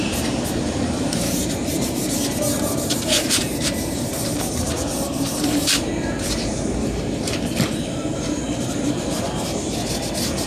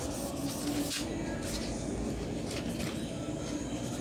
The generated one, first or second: first